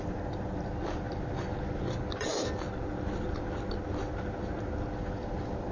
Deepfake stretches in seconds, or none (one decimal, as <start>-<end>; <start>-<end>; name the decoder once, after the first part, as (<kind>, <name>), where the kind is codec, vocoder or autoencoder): none